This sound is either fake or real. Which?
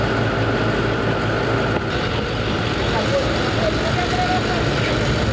real